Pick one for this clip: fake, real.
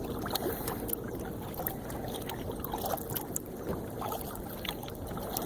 real